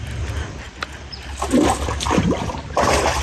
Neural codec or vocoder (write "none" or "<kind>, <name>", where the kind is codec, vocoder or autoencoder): none